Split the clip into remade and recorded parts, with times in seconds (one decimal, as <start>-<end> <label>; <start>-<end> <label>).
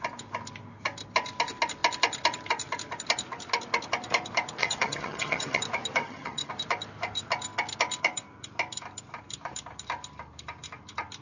0.0-4.6 recorded; 4.6-5.6 remade; 5.6-6.0 recorded; 6.0-6.5 remade; 6.5-11.2 recorded